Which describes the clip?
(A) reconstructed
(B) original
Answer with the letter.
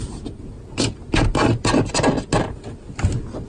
B